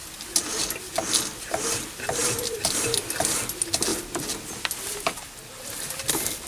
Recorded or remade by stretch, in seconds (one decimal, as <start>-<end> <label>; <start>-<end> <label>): 0.0-2.2 recorded; 2.2-3.4 remade; 3.4-3.9 recorded; 3.9-6.1 remade; 6.1-6.5 recorded